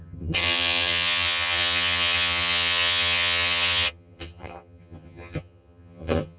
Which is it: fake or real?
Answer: fake